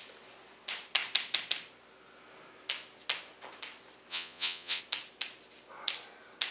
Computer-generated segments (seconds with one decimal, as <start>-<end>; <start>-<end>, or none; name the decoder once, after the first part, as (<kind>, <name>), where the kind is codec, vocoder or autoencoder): 4.1-4.8 (vocoder, Vocos)